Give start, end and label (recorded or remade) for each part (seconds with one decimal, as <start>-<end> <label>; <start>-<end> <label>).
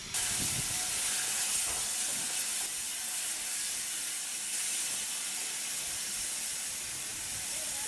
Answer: 0.0-7.9 recorded